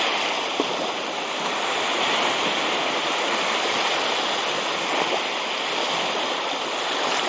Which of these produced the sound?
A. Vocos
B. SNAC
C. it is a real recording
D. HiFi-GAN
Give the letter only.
C